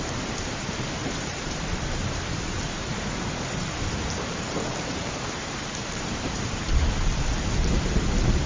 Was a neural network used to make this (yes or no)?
yes